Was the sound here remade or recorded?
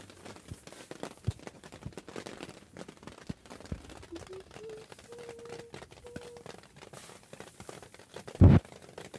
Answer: recorded